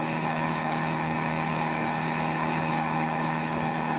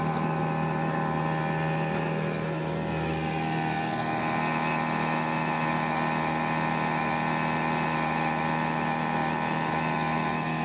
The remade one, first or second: first